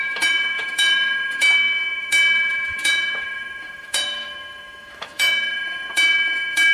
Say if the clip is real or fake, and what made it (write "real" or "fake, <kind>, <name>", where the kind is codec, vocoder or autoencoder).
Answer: fake, autoencoder, DAC-VAE